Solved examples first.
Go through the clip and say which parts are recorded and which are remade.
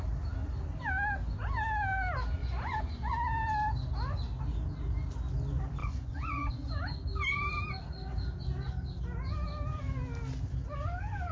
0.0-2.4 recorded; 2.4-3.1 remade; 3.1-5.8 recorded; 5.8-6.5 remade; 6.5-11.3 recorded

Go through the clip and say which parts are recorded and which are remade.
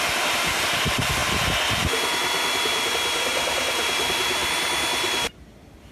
0.0-1.2 remade; 1.2-2.9 recorded; 2.9-5.9 remade